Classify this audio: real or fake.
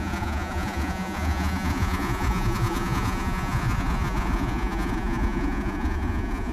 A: fake